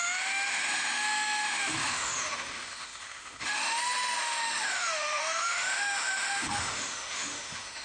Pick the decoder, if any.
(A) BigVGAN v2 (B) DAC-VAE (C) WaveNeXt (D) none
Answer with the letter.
B